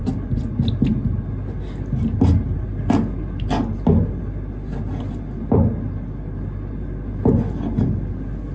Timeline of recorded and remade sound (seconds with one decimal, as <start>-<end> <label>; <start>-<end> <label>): 0.0-8.5 recorded